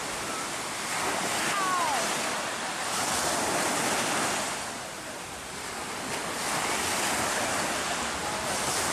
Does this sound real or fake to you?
real